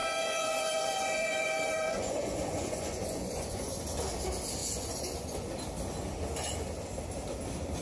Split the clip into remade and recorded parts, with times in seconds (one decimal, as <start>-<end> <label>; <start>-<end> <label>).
0.0-3.8 remade; 3.8-4.6 recorded; 4.6-5.5 remade; 5.5-7.8 recorded